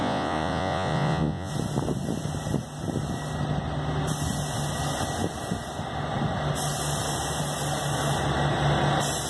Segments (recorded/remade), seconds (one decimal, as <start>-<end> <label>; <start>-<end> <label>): 0.0-1.5 remade; 1.5-9.3 recorded